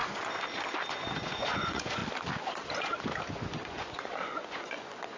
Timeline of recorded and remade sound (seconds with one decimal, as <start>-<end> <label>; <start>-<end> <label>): 0.0-0.9 recorded; 0.9-2.0 remade; 2.0-3.3 recorded; 3.3-5.2 remade